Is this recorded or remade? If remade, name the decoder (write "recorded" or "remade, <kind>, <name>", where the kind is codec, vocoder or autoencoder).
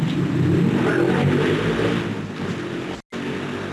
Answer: recorded